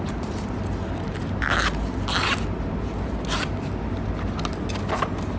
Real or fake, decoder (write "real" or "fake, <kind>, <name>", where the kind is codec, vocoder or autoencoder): real